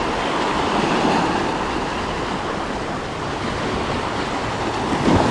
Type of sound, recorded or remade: recorded